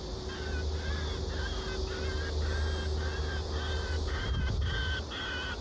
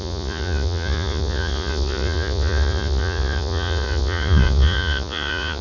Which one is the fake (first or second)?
second